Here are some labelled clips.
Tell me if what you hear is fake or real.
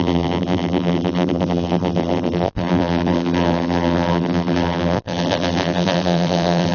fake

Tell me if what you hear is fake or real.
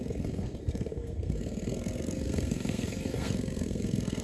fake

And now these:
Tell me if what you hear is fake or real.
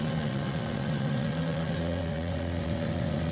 fake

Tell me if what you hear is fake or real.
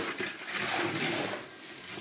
real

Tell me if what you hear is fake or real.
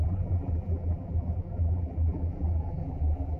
fake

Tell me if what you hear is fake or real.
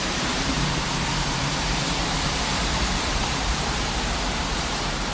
fake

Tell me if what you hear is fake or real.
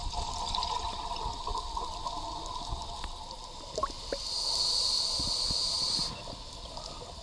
real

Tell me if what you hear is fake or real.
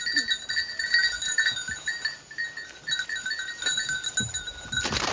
real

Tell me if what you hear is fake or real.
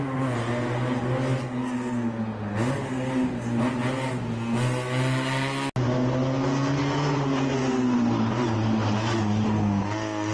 real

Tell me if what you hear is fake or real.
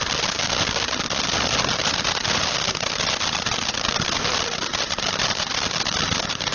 real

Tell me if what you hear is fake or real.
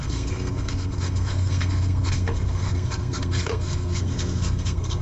fake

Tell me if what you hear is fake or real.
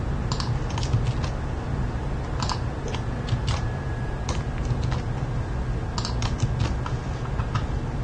real